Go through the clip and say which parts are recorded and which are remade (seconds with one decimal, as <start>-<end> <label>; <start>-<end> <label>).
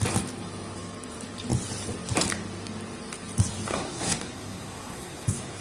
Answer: 0.0-3.7 recorded; 3.7-5.6 remade